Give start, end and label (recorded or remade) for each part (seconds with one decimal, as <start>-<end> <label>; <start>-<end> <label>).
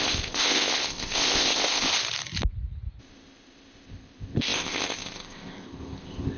0.0-1.9 remade; 1.9-3.0 recorded; 3.0-6.4 remade